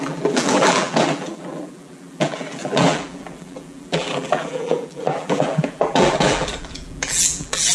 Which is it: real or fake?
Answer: fake